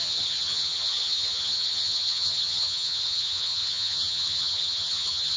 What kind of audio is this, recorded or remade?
remade